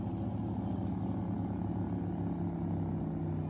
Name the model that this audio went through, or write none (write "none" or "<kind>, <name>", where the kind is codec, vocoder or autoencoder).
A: none